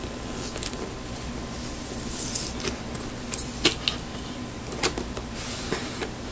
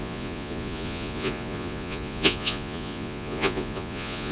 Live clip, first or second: first